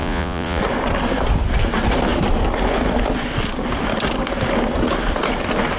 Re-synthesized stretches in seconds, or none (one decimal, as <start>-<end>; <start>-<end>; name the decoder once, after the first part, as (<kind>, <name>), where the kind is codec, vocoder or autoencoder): 0.0-0.6 (vocoder, Vocos)